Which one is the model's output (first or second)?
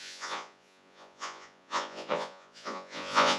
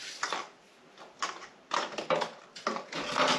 first